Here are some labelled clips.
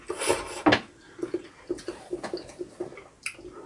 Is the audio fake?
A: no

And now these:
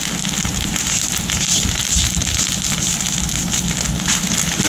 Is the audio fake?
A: no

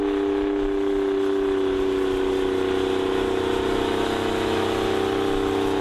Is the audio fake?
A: no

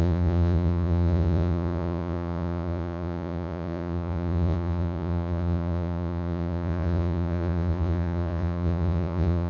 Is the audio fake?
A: yes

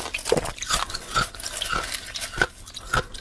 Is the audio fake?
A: no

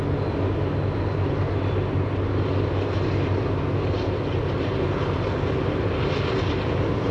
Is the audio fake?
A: no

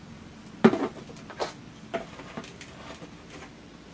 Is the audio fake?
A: no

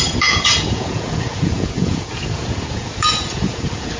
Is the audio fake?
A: yes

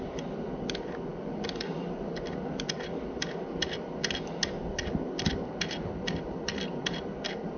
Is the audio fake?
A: no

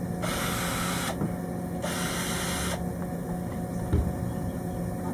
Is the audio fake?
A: no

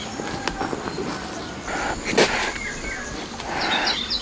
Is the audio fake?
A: no